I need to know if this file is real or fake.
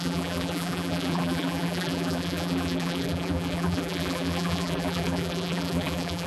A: fake